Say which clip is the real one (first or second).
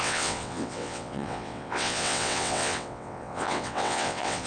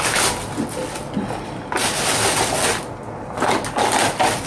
second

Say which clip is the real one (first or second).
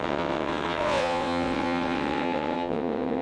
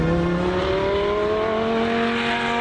second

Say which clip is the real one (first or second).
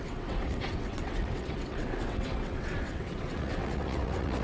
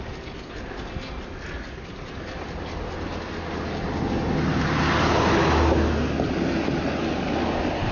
second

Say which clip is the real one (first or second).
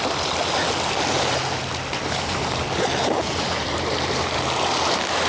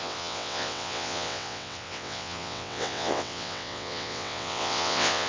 first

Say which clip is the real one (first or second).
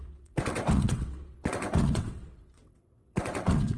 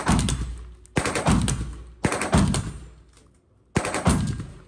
second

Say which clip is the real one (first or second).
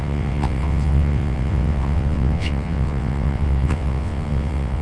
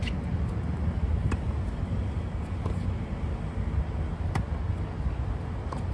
second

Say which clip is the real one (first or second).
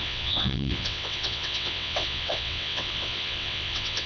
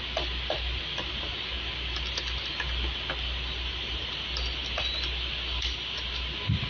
second